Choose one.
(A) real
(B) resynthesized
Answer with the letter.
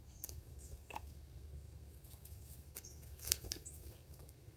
B